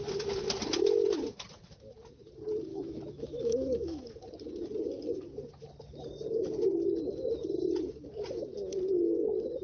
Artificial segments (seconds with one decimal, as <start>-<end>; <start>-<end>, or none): 2.7-4.0